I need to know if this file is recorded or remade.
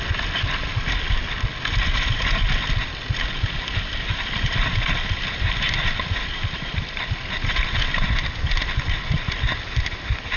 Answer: recorded